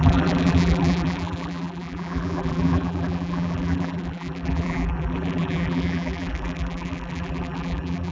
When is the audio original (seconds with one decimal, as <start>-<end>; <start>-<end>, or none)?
none

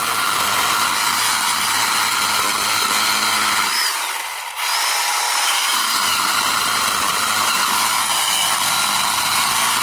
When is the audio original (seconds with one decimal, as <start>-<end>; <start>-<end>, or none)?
0.0-4.7; 8.0-9.8

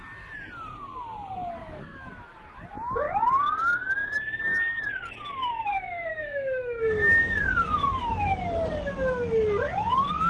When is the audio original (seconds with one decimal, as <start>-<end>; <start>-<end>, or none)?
0.0-1.6; 2.1-6.1; 7.2-10.3

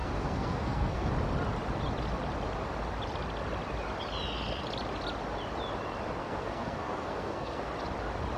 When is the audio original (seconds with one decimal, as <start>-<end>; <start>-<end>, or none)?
1.1-6.2; 7.7-8.4

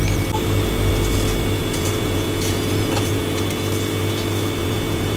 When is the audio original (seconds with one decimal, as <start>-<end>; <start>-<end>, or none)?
0.0-1.6; 3.4-4.6

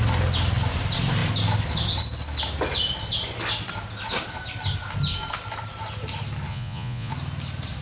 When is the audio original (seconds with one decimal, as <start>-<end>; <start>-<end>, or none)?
0.0-6.5; 7.1-7.8